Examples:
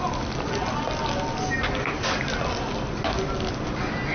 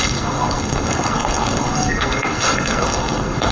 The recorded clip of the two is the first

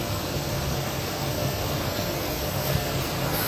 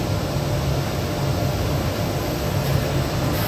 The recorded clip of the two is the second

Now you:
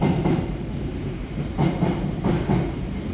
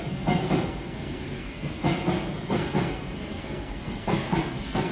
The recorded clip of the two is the first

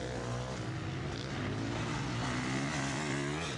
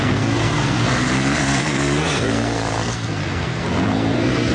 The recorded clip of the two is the first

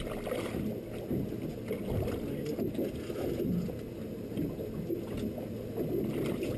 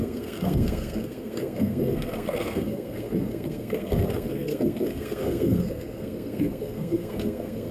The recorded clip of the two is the first